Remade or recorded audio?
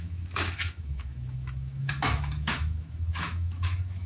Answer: remade